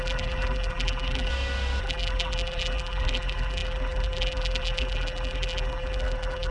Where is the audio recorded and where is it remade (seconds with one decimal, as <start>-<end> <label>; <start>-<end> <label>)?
0.0-1.3 remade; 1.3-1.8 recorded; 1.8-6.5 remade

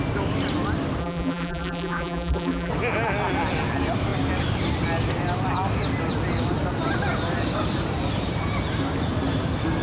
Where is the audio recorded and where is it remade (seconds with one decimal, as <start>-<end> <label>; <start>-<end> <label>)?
0.0-1.0 recorded; 1.0-2.7 remade; 2.7-9.8 recorded

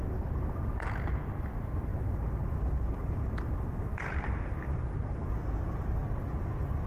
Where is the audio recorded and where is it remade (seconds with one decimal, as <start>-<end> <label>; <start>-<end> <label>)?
0.0-1.9 recorded; 1.9-4.8 remade; 4.8-6.9 recorded

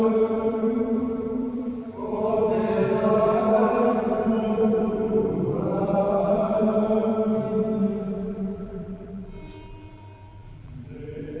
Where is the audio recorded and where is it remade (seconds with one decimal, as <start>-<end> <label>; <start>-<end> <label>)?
0.0-2.5 remade; 2.5-3.1 recorded; 3.1-7.1 remade; 7.1-8.0 recorded; 8.0-11.4 remade

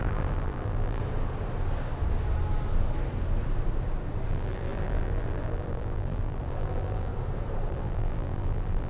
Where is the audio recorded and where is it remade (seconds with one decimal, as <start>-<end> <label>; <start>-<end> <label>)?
0.0-1.0 remade; 1.0-4.3 recorded; 4.3-7.1 remade; 7.1-7.7 recorded; 7.7-8.9 remade

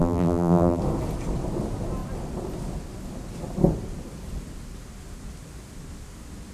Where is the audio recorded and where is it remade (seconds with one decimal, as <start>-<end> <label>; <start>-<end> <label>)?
0.0-0.8 remade; 0.8-6.5 recorded